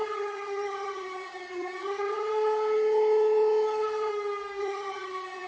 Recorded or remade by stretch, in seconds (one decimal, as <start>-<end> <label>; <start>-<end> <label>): 0.0-4.1 remade; 4.1-4.6 recorded; 4.6-5.5 remade